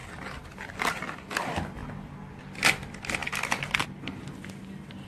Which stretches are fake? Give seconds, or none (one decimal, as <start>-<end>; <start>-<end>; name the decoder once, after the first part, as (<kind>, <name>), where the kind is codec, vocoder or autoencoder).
0.0-0.9 (vocoder, BigVGAN v2)